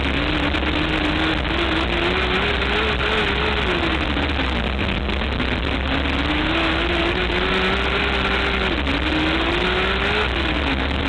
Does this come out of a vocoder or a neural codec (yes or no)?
no